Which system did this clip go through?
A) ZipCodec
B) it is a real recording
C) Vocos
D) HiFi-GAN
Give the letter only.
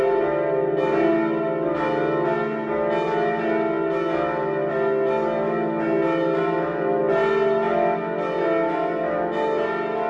B